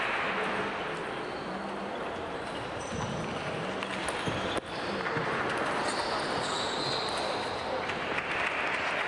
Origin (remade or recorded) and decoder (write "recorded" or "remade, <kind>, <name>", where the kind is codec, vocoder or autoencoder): recorded